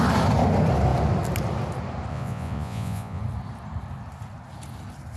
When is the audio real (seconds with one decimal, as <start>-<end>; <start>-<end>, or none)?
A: 0.0-2.1; 3.2-5.2

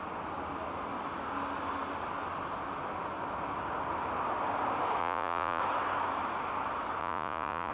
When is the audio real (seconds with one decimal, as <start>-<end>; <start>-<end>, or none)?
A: 0.0-5.0; 5.6-7.0

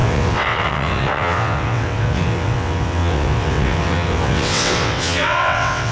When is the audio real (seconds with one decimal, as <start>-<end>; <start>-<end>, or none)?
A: none